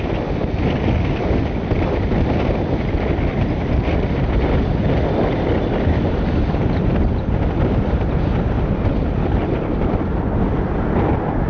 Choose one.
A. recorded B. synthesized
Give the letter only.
A